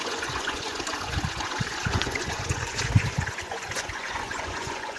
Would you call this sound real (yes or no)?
no